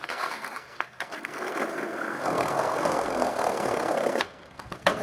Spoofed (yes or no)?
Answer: yes